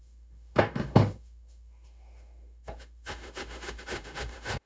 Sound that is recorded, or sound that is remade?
remade